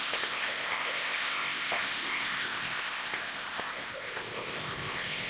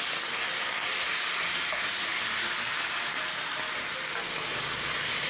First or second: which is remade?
first